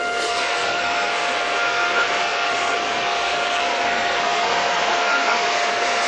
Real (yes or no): no